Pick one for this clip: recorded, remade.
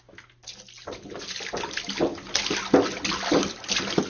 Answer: recorded